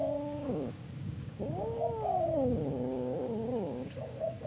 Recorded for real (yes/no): no